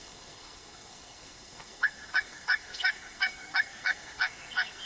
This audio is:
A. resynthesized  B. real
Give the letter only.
A